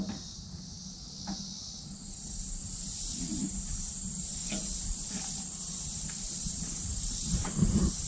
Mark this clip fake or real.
real